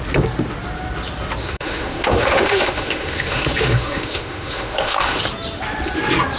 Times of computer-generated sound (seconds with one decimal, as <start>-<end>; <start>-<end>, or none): 1.4-5.2